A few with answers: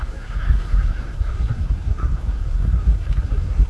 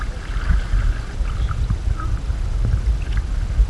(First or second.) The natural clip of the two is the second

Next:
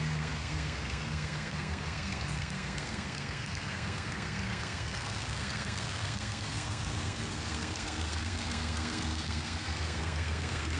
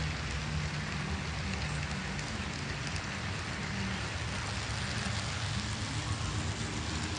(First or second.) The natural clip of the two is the second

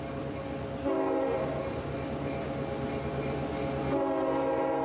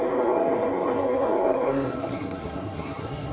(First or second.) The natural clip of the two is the first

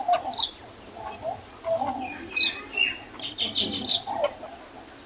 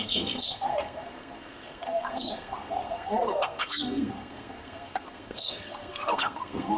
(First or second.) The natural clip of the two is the first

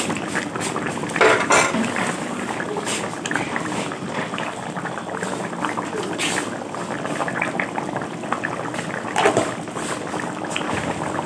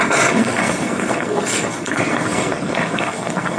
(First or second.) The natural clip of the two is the first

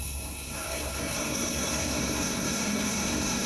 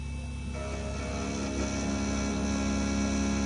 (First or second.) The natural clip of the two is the second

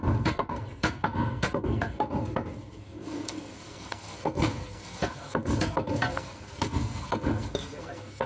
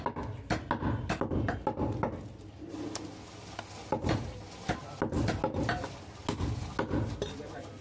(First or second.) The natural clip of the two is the second